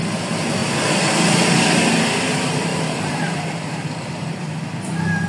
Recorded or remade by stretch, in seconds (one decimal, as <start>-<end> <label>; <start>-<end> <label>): 0.0-2.7 recorded; 2.7-4.4 remade; 4.4-5.3 recorded